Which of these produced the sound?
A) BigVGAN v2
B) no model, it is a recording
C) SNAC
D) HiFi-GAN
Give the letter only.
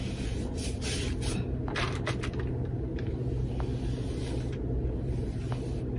B